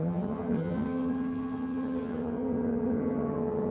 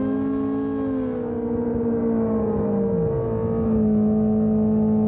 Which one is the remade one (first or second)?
first